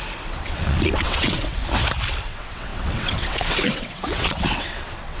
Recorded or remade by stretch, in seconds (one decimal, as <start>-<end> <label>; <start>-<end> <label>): 0.0-1.6 remade; 1.6-2.3 recorded; 2.3-5.2 remade